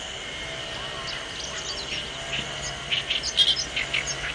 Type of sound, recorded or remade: recorded